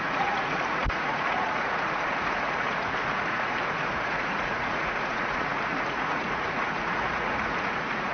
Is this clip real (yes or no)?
no